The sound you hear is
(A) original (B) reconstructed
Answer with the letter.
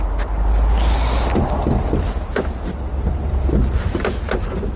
A